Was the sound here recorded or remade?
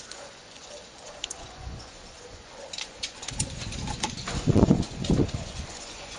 remade